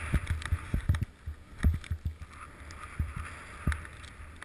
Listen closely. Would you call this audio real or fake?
real